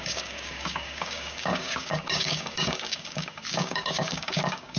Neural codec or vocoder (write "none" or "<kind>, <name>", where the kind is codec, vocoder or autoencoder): codec, DAC